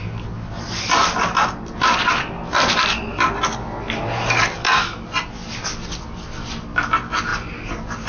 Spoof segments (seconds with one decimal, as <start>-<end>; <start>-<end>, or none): none